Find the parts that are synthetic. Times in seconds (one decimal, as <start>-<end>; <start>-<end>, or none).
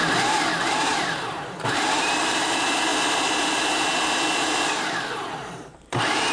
0.6-2.9; 5.5-6.3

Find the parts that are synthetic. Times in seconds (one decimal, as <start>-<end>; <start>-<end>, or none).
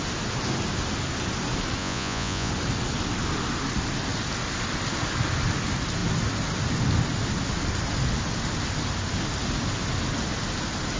1.8-2.5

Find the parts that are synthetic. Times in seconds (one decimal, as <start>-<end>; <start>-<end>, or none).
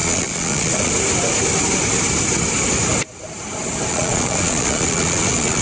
0.0-0.9; 3.9-5.6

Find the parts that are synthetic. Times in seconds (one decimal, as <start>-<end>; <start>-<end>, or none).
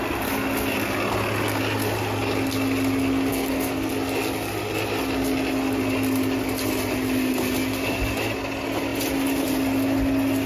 3.3-3.9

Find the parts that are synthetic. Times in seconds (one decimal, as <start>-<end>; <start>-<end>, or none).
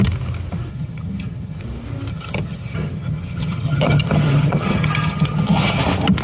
0.7-1.6; 2.1-5.8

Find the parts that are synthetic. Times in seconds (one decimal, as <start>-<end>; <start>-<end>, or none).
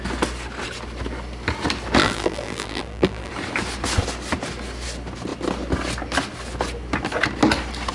2.0-3.3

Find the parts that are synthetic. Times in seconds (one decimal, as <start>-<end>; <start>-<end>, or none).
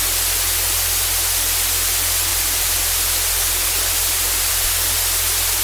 2.3-4.5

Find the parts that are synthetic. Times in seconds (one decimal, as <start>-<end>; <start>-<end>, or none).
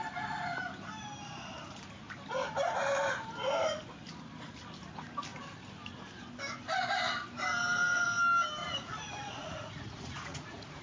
8.6-10.8